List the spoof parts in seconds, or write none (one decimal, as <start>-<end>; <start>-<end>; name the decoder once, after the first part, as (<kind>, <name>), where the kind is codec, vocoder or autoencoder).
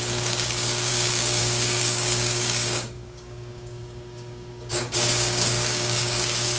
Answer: 0.0-6.6 (codec, DAC)